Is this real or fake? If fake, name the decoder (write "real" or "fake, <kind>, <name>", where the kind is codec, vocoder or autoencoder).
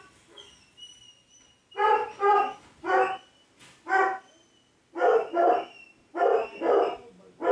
real